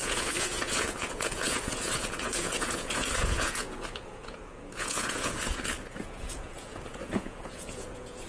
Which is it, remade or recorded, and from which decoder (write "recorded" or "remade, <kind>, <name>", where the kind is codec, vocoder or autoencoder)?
remade, vocoder, Vocos